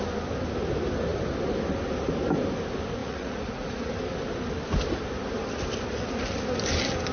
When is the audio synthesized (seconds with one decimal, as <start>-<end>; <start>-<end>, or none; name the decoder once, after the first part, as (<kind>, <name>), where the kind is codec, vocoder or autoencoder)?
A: 3.0-3.9 (vocoder, Vocos)